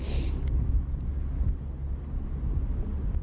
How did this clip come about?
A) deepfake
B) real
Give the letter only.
B